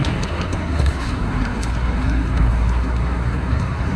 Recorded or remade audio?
remade